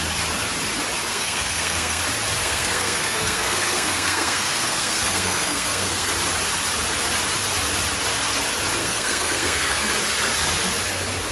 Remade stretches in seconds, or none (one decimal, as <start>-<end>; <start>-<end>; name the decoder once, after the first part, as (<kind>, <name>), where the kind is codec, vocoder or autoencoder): 1.1-2.0 (codec, SNAC); 2.4-6.1; 8.8-9.9